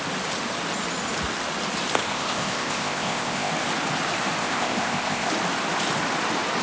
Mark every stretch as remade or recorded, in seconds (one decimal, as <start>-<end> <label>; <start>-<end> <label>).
0.0-2.0 recorded; 2.0-3.5 remade; 3.5-4.4 recorded; 4.4-5.3 remade; 5.3-6.6 recorded